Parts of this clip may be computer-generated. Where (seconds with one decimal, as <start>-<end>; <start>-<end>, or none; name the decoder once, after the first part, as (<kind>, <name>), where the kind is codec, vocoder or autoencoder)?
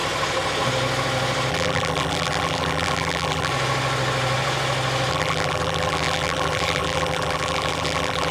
1.5-3.5 (vocoder, BigVGAN v2); 5.1-8.3